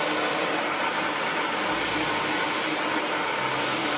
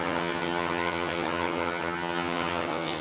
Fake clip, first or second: second